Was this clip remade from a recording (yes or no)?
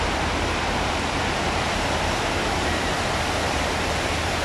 no